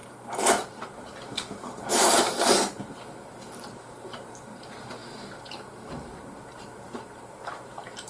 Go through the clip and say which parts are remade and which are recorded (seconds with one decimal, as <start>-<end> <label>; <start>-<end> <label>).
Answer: 0.0-8.1 remade